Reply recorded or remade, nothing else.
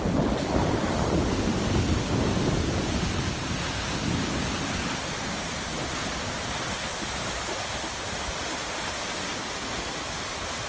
recorded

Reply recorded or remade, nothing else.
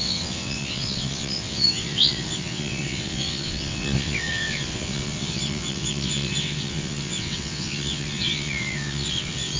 remade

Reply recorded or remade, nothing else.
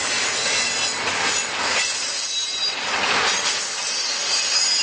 recorded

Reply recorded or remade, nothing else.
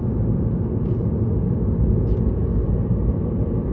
recorded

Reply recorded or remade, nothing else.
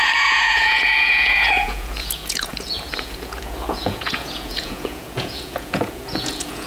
remade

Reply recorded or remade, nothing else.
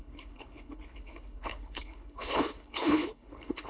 remade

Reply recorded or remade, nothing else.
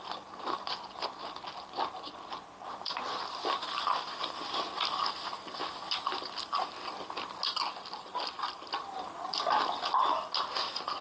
recorded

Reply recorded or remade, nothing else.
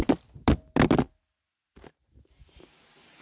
recorded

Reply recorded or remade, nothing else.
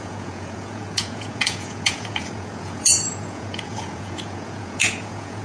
remade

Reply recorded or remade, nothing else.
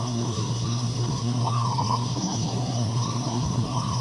remade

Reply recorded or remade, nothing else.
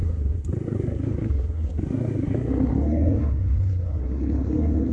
remade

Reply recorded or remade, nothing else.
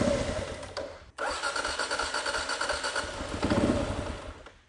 recorded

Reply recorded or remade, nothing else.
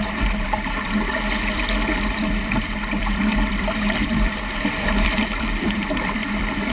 remade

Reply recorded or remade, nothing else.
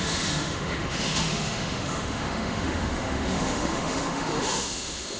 remade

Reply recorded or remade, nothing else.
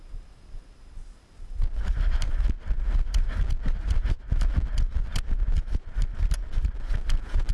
recorded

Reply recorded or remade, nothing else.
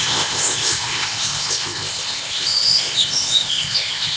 remade